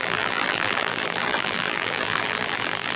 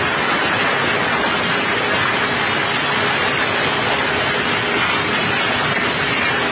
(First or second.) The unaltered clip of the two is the second